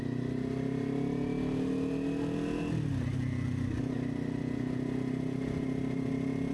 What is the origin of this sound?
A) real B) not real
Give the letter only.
A